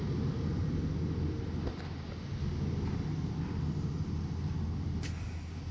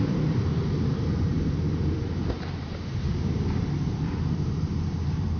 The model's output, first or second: second